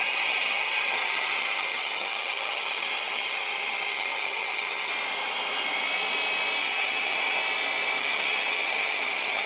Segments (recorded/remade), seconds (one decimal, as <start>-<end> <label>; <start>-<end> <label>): 0.0-4.9 remade; 4.9-6.6 recorded; 6.6-7.4 remade; 7.4-8.0 recorded; 8.0-9.5 remade